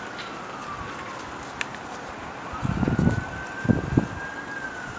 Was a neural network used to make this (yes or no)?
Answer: no